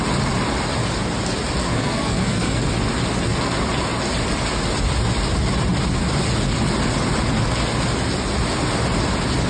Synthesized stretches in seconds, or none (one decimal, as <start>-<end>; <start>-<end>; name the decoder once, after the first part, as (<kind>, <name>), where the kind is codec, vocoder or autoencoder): 1.6-2.6 (codec, SNAC)